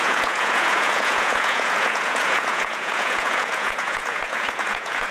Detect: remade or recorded remade